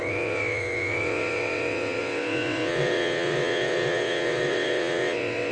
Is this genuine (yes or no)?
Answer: no